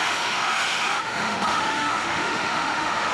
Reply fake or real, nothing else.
fake